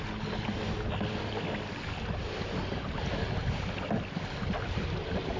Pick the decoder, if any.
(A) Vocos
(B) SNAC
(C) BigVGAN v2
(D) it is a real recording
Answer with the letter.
D